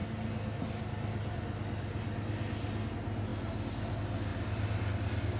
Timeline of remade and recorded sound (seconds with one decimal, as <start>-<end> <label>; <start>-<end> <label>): 0.0-5.4 recorded